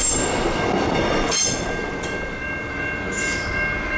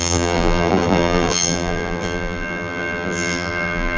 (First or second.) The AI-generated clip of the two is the second